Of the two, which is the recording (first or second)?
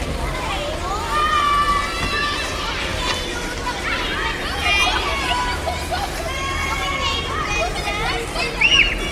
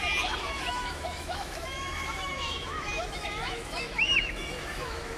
first